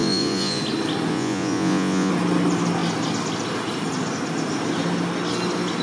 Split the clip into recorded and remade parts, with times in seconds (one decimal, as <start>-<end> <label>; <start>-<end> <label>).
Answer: 0.0-0.6 remade; 0.6-1.1 recorded; 1.1-2.1 remade; 2.1-5.8 recorded